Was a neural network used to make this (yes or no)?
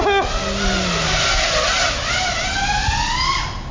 no